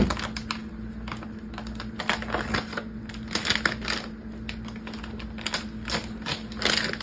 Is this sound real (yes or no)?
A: yes